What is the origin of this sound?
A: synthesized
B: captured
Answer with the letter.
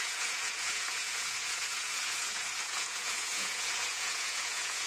A